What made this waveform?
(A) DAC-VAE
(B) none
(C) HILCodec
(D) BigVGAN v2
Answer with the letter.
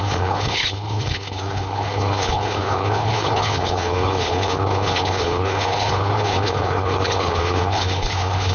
C